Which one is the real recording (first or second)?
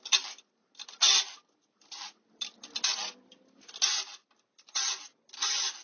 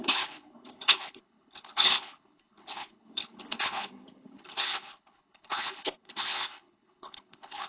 first